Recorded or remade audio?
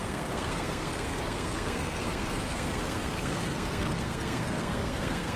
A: remade